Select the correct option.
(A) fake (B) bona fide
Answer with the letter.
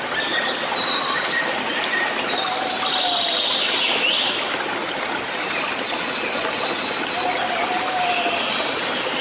B